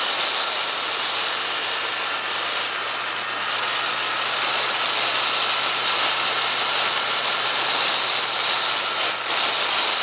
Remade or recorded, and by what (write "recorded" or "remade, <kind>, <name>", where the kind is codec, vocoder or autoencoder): recorded